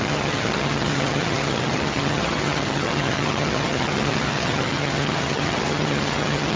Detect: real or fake fake